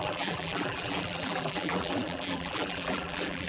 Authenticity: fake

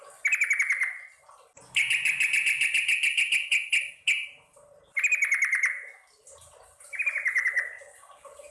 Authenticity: real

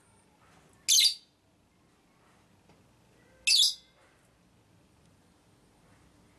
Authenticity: real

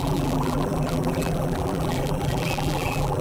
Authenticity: fake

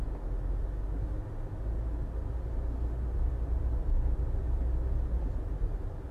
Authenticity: real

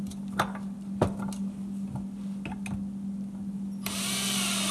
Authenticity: real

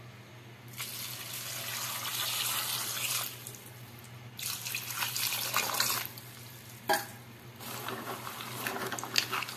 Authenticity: real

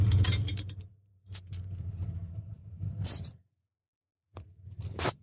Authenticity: fake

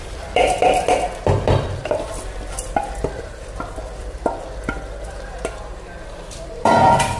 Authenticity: fake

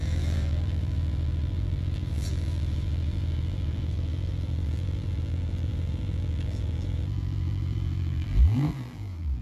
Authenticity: fake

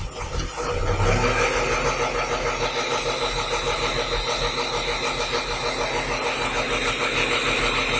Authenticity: real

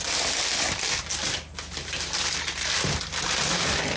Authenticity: real